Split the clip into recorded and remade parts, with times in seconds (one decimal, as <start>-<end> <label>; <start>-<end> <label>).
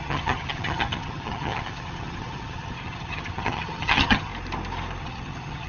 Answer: 0.0-4.3 remade; 4.3-5.0 recorded; 5.0-5.7 remade